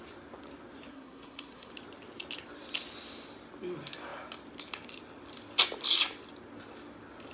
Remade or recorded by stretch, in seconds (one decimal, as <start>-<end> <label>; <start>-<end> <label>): 0.0-0.9 recorded; 0.9-1.7 remade; 1.7-7.3 recorded

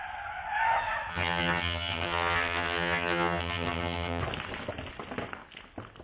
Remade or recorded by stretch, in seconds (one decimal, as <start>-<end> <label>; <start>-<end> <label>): 0.0-1.1 recorded; 1.1-4.2 remade; 4.2-6.0 recorded